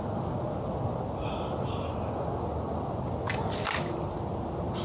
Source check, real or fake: real